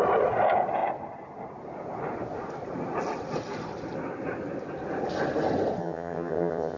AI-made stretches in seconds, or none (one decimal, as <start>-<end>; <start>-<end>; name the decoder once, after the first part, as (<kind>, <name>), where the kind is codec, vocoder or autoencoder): 5.8-6.8 (vocoder, HiFi-GAN)